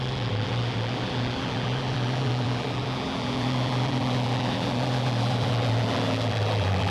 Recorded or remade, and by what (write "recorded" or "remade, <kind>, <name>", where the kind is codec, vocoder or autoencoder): remade, vocoder, BigVGAN v2